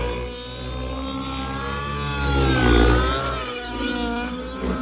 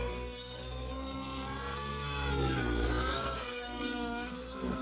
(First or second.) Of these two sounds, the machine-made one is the second